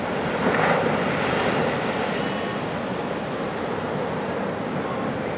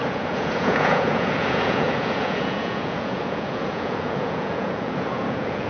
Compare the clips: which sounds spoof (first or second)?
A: second